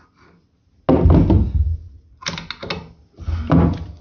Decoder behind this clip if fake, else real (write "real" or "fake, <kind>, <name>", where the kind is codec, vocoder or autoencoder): real